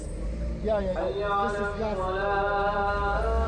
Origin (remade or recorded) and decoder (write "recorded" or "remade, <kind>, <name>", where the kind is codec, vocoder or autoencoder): recorded